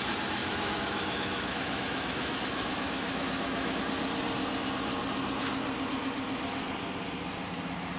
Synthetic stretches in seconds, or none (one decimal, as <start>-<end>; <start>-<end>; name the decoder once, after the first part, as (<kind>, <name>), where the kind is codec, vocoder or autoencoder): 0.4-3.8 (autoencoder, DAC-VAE)